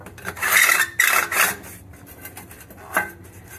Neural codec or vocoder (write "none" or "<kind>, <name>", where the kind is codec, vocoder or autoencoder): none